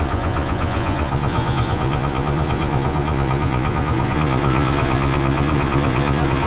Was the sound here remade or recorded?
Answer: remade